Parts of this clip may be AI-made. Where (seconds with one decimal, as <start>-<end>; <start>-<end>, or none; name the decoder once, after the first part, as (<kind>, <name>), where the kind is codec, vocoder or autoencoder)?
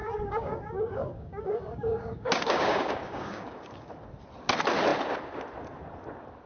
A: 0.0-3.9 (codec, DAC)